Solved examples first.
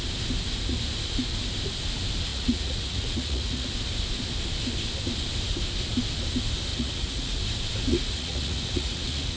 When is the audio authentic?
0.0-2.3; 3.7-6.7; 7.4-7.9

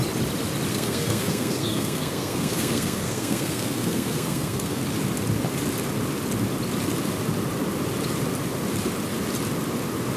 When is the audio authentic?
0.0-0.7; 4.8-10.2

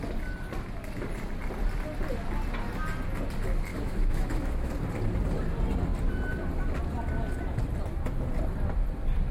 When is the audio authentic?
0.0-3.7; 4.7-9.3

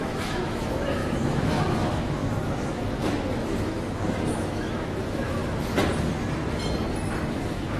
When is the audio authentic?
5.4-7.3

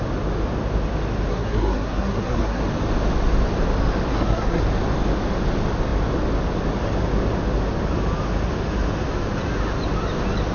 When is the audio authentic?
0.0-1.3; 2.6-4.1; 4.6-10.5

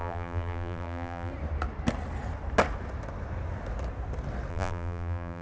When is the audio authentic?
1.3-4.5